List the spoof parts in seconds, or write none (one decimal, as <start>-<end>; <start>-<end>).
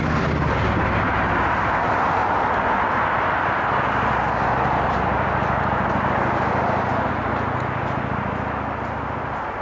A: none